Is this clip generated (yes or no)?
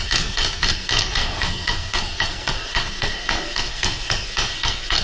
yes